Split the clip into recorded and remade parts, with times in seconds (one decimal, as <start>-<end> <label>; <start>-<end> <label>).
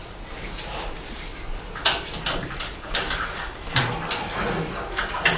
0.0-2.4 recorded; 2.4-3.8 remade; 3.8-5.4 recorded